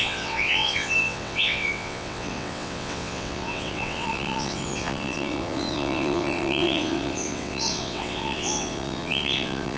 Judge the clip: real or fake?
fake